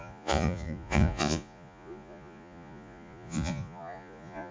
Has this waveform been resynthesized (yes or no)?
yes